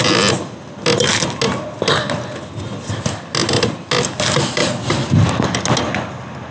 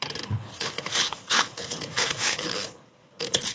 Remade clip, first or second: second